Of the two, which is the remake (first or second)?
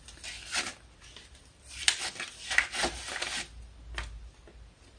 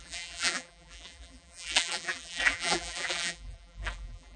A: second